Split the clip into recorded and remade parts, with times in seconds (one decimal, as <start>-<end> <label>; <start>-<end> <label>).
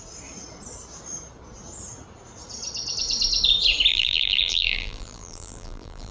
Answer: 0.0-3.9 recorded; 3.9-6.1 remade